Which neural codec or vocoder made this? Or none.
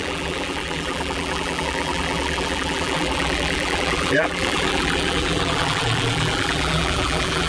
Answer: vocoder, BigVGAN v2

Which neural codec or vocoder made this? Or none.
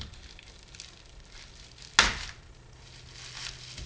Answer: none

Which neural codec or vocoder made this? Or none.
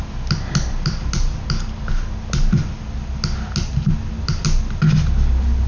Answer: none